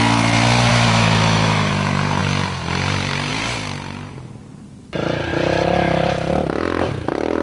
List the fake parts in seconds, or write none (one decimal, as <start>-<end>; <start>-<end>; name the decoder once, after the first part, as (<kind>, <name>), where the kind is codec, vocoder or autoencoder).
0.7-1.7 (autoencoder, DAC-VAE)